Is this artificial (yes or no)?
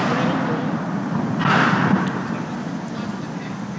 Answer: no